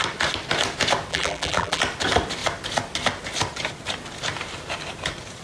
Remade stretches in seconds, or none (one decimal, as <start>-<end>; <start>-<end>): 1.1-1.8